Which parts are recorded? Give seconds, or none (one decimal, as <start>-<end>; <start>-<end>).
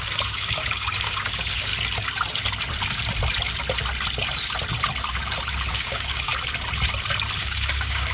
1.7-5.7; 6.3-7.4